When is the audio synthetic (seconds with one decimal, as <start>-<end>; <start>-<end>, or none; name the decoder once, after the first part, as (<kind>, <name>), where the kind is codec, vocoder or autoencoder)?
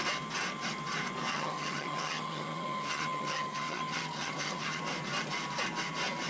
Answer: 1.3-4.8 (vocoder, HiFi-GAN)